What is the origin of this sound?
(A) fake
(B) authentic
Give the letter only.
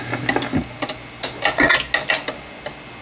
B